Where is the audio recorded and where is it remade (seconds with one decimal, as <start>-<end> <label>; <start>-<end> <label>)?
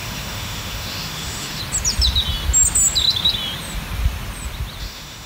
0.0-1.6 remade; 1.6-4.8 recorded; 4.8-5.3 remade